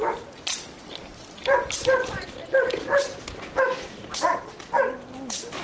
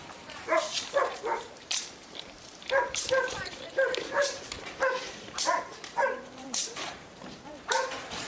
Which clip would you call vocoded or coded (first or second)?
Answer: second